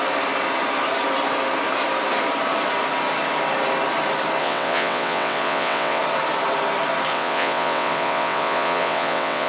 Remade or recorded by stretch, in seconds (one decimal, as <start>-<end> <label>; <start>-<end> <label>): 0.0-4.4 recorded; 4.4-6.0 remade; 6.0-7.1 recorded; 7.1-9.5 remade